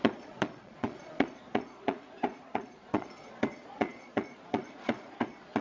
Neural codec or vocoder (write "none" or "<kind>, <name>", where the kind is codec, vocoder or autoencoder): vocoder, Vocos